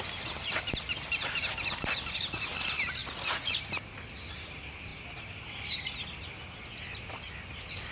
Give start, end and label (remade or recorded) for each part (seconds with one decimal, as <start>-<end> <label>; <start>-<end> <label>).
0.0-3.0 recorded; 3.0-3.6 remade; 3.6-7.9 recorded